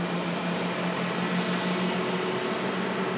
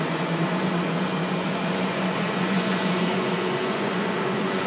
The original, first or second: first